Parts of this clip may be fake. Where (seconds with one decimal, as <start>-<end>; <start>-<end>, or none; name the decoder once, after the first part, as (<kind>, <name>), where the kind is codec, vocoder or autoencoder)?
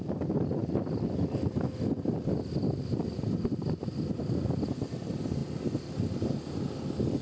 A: none